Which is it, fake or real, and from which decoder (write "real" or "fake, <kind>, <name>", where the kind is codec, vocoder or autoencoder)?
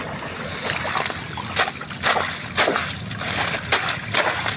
real